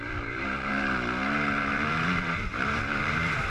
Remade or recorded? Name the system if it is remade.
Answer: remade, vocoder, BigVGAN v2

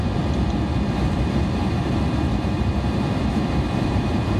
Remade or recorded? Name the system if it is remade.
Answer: remade, vocoder, BigVGAN v2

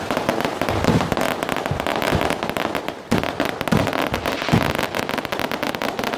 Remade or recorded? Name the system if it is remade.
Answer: recorded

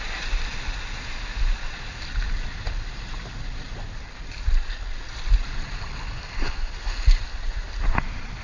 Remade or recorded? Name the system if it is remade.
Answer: recorded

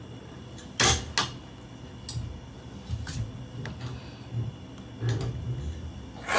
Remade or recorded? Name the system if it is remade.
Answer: recorded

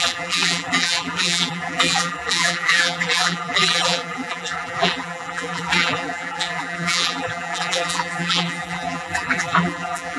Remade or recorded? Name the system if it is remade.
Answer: remade, vocoder, BigVGAN v2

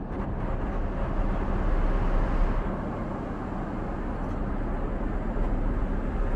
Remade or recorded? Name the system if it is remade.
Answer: recorded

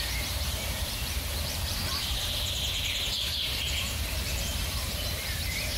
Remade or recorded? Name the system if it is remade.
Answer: remade, vocoder, BigVGAN v2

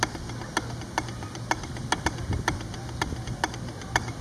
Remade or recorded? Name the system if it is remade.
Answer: recorded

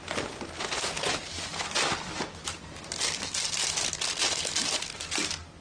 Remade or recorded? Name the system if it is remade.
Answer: recorded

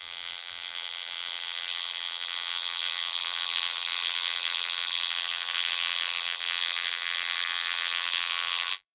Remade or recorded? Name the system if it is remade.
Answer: remade, vocoder, BigVGAN v2